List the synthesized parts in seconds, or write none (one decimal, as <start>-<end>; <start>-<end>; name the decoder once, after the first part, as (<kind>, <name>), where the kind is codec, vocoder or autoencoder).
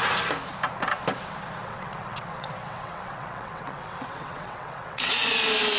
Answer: 1.6-5.1 (vocoder, WaveNeXt)